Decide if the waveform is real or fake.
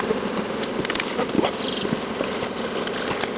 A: real